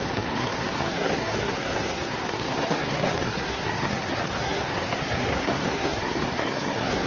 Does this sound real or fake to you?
fake